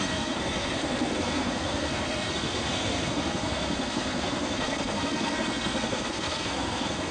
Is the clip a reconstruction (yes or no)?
yes